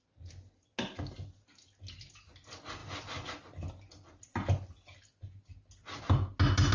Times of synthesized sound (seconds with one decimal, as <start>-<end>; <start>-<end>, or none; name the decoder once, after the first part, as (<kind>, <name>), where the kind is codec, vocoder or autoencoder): none